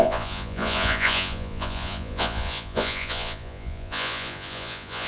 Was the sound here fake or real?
fake